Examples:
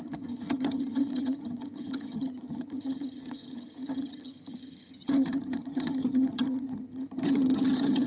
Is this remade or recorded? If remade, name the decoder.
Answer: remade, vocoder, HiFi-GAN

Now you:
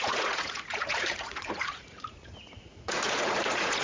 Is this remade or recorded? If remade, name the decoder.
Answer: remade, vocoder, Vocos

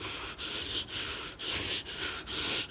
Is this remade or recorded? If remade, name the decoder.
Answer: recorded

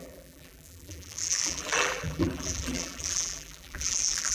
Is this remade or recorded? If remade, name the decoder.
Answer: remade, vocoder, BigVGAN v2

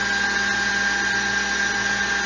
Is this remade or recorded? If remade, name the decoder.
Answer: recorded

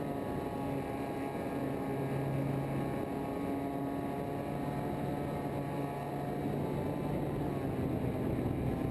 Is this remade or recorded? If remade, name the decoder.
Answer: recorded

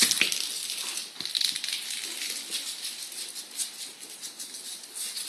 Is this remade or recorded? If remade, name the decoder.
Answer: recorded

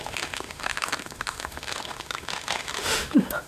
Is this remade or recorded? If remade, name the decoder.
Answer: remade, autoencoder, DAC-VAE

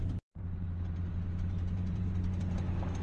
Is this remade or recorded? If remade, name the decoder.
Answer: remade, vocoder, BigVGAN v2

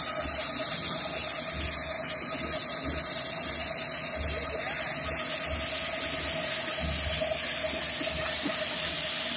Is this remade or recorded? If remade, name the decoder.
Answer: recorded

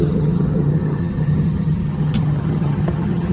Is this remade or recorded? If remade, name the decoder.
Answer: remade, vocoder, HiFi-GAN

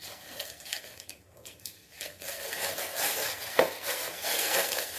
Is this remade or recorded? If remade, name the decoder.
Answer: remade, codec, SNAC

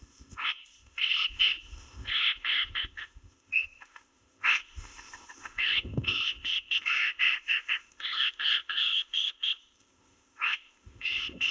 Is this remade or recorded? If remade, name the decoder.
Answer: remade, codec, ZipCodec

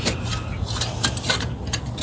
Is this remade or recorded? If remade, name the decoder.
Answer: recorded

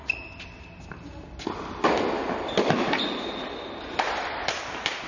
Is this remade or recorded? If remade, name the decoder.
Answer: recorded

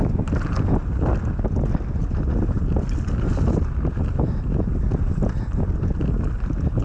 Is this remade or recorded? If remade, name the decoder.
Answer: recorded